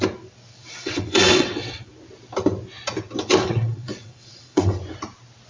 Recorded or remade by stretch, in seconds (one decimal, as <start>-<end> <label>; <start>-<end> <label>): 0.0-0.5 recorded; 0.5-1.9 remade; 1.9-3.4 recorded; 3.4-4.8 remade; 4.8-5.5 recorded